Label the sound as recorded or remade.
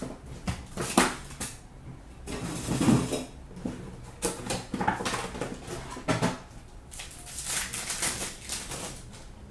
recorded